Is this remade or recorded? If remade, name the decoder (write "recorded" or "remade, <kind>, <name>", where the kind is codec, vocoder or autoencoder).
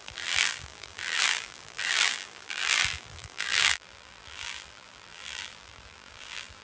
remade, vocoder, BigVGAN v2